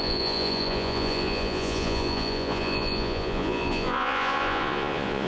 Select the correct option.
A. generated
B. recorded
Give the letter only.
A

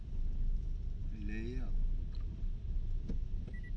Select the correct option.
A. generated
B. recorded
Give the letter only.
B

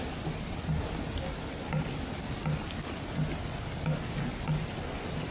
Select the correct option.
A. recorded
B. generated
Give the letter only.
A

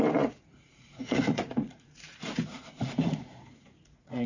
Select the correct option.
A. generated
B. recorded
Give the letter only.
A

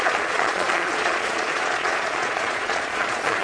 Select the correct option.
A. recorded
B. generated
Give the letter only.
B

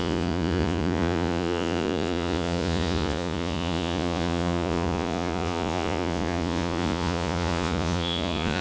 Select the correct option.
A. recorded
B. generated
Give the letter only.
B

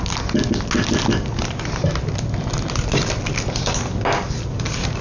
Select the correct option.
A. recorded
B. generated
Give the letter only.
A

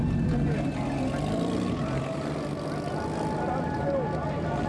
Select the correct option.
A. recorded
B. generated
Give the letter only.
A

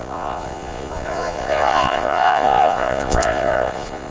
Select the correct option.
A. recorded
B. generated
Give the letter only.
B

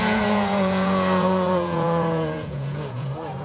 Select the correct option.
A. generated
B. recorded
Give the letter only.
A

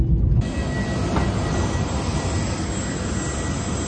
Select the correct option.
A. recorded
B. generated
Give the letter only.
A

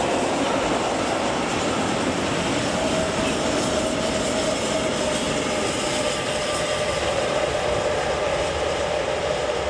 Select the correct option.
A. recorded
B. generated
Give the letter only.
A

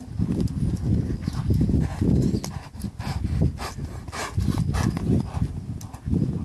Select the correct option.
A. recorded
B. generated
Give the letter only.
A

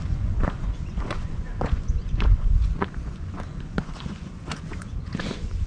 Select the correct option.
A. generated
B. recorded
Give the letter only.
A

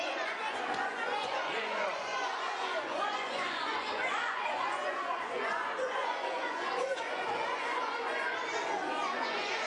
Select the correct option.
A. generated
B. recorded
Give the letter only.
A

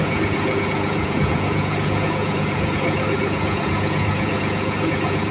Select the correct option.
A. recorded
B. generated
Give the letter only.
B